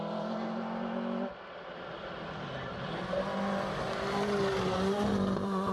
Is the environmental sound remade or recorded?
recorded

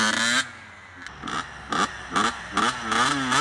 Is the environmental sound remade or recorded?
recorded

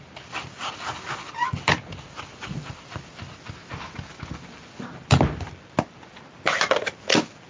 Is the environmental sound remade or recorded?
recorded